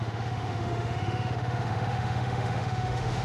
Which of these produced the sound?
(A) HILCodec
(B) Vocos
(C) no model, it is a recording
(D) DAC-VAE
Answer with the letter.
D